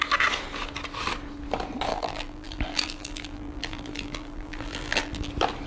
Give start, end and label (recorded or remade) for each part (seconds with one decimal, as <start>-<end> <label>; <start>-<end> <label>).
0.0-1.9 recorded; 1.9-5.3 remade; 5.3-5.7 recorded